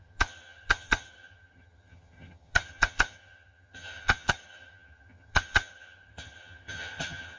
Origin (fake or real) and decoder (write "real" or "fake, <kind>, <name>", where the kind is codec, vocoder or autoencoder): fake, vocoder, HiFi-GAN